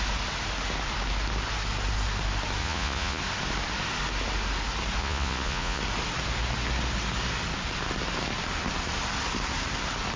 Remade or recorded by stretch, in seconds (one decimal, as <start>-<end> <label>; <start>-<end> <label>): 0.0-2.6 recorded; 2.6-3.2 remade; 3.2-5.0 recorded; 5.0-5.8 remade; 5.8-10.2 recorded